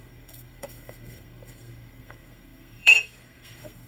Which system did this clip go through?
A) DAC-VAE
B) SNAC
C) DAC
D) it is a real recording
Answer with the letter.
B